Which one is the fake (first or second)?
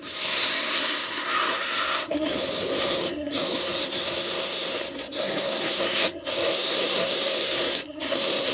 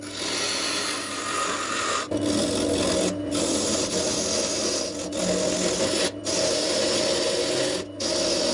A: first